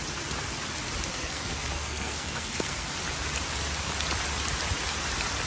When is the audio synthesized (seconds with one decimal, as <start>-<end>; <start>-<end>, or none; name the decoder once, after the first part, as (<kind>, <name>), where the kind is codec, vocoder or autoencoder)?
1.1-2.9 (codec, SNAC)